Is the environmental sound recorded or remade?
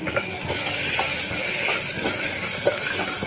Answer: recorded